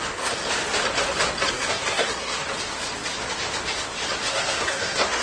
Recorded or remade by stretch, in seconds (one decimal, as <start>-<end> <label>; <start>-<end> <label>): 0.0-0.4 remade; 0.4-1.5 recorded; 1.5-2.4 remade; 2.4-4.3 recorded; 4.3-5.2 remade